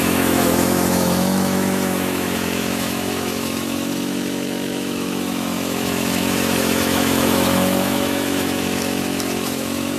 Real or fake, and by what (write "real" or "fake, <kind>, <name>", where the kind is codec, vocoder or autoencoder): fake, autoencoder, DAC-VAE